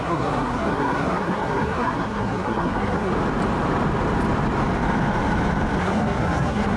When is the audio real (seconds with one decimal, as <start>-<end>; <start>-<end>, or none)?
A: 3.1-5.8